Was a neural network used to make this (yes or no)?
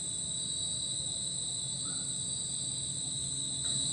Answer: no